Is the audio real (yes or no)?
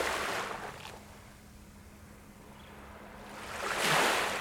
yes